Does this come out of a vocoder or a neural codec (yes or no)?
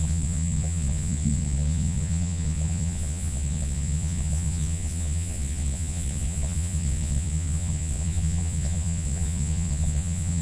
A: yes